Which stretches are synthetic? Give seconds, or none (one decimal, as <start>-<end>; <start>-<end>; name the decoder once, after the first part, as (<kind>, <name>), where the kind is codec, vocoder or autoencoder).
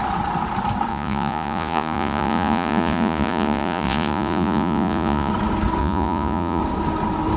0.9-5.3 (vocoder, Vocos); 5.8-6.6